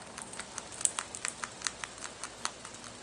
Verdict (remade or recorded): recorded